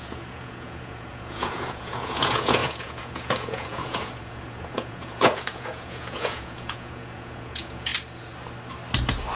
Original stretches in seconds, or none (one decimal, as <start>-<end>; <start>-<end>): 7.9-9.4